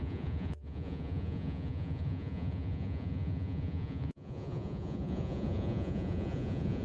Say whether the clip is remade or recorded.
remade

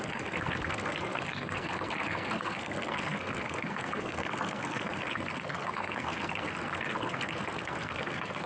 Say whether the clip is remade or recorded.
remade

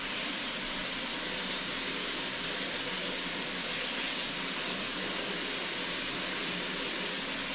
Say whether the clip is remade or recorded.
recorded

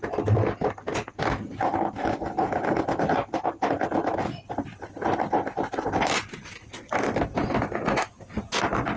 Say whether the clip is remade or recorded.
recorded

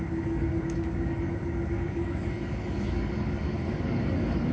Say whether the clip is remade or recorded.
remade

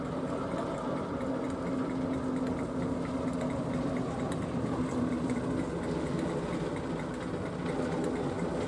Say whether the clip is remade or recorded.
recorded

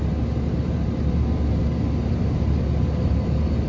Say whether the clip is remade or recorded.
remade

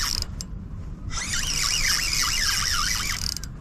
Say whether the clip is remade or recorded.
recorded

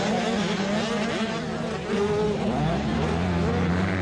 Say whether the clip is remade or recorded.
recorded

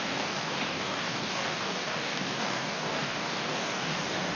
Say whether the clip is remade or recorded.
remade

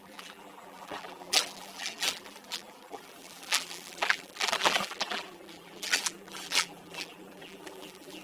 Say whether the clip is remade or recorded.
remade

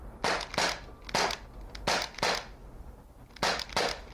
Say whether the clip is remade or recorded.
recorded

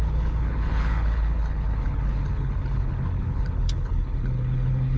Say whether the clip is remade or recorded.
remade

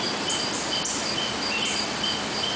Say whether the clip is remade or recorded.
recorded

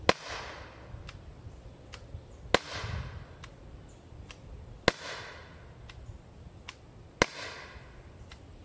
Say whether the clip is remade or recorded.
recorded